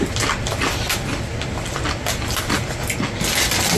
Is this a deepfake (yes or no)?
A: no